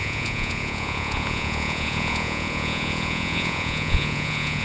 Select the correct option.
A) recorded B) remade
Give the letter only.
B